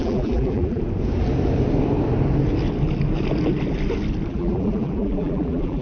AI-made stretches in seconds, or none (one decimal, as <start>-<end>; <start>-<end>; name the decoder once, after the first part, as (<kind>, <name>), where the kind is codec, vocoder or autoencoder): 0.0-0.8 (vocoder, BigVGAN v2); 4.3-5.8